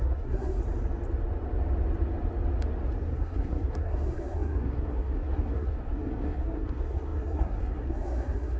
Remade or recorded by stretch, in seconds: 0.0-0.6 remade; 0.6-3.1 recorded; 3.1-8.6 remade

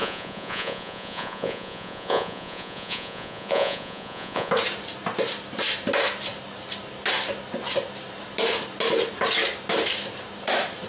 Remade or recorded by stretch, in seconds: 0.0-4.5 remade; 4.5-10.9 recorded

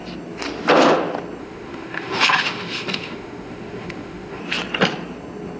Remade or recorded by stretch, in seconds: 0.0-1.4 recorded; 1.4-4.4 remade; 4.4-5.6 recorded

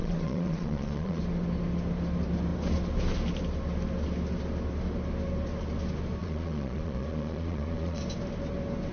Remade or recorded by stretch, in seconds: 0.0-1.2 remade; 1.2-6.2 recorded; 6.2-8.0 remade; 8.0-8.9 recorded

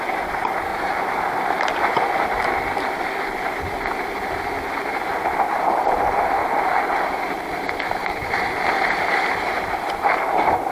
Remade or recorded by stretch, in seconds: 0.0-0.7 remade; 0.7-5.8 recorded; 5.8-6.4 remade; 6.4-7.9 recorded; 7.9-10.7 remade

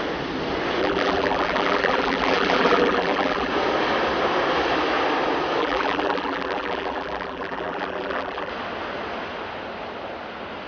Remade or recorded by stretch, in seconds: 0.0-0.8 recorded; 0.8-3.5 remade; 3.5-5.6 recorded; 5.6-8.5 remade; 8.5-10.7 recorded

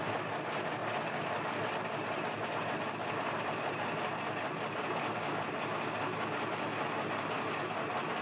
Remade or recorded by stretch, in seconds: 0.0-8.2 recorded